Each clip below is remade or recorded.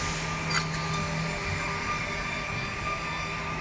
recorded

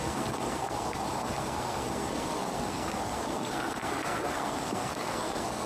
remade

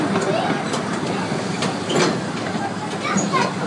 recorded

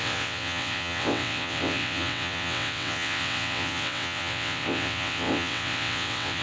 remade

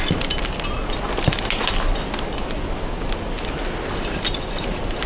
recorded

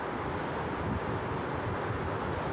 recorded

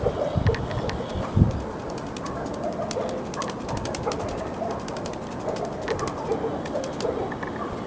recorded